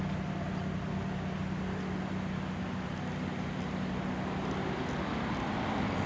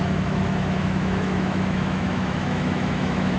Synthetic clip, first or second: second